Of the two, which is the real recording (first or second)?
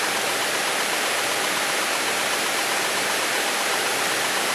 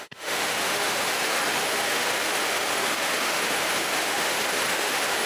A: first